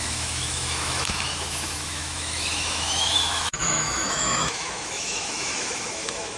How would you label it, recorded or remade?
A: remade